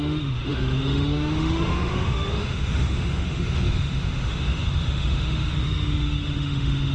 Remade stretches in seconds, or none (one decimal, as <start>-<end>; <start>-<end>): 0.0-6.9